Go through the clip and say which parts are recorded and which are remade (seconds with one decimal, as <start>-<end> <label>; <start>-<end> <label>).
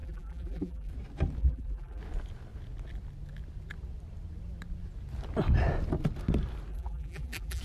0.0-0.9 remade; 0.9-1.4 recorded; 1.4-2.0 remade; 2.0-6.7 recorded; 6.7-7.6 remade